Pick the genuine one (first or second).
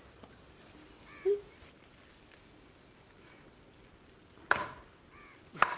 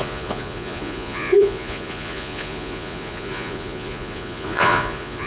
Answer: first